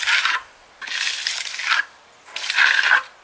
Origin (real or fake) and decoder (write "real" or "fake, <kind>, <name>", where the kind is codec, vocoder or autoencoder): real